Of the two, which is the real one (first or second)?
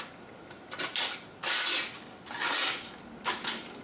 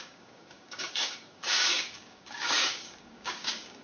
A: first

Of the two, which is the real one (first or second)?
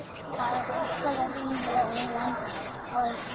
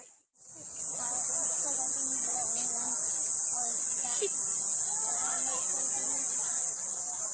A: second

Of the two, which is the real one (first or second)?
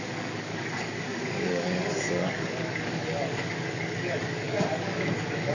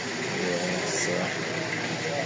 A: second